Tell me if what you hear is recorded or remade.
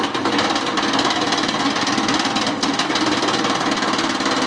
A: recorded